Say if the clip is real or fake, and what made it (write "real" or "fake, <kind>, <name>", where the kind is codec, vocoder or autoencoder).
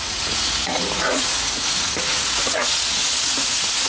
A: fake, vocoder, Vocos